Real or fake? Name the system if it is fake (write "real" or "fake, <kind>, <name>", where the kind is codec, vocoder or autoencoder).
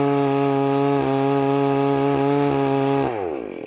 real